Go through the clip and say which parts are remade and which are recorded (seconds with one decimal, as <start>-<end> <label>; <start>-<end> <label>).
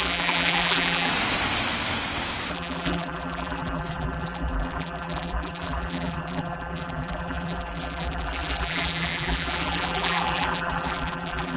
0.0-1.1 remade; 1.1-2.5 recorded; 2.5-11.6 remade